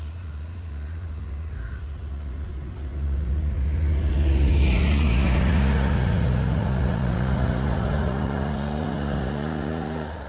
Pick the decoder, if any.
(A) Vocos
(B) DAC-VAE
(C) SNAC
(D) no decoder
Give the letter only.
A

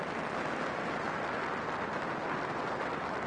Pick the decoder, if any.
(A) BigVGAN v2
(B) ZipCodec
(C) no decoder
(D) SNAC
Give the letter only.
C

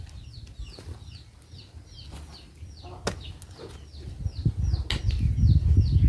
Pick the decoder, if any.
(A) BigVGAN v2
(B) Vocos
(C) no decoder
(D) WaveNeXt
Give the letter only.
C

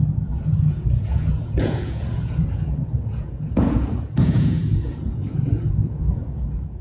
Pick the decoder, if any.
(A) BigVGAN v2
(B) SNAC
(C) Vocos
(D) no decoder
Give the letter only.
C